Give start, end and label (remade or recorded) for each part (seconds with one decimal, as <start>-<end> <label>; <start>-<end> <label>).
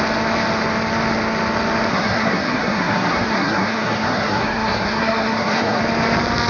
0.0-1.9 recorded; 1.9-5.8 remade; 5.8-6.5 recorded